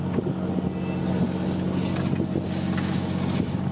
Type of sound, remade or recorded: recorded